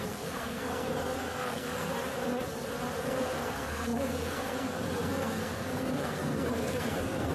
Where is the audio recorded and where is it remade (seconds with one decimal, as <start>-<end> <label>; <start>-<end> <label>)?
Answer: 0.0-1.9 remade; 1.9-3.0 recorded; 3.0-7.3 remade